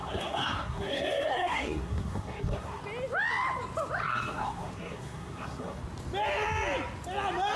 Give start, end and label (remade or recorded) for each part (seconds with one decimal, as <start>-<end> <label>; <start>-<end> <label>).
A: 0.0-2.8 remade; 2.8-4.0 recorded; 4.0-5.8 remade; 5.8-7.6 recorded